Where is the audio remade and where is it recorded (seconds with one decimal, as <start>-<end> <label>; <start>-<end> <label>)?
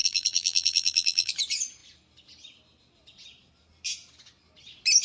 0.0-1.3 remade; 1.3-5.0 recorded